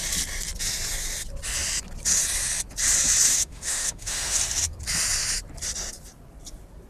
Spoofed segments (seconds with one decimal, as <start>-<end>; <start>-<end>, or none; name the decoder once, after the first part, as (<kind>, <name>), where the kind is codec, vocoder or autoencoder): 3.3-4.4 (autoencoder, DAC-VAE)